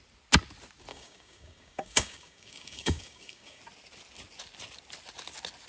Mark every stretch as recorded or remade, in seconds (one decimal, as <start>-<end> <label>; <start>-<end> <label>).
0.0-0.9 recorded; 0.9-3.6 remade; 3.6-5.7 recorded